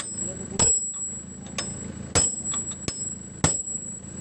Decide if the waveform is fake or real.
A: real